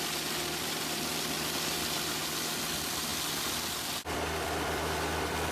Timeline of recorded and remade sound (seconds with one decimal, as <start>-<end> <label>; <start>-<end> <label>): 0.0-1.1 remade; 1.1-1.7 recorded; 1.7-2.2 remade; 2.2-2.7 recorded; 2.7-5.5 remade